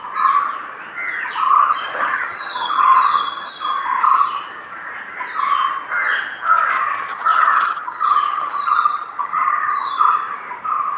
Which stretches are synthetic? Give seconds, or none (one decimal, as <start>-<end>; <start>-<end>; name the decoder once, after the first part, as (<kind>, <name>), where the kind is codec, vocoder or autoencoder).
2.0-3.5 (vocoder, HiFi-GAN); 7.1-10.0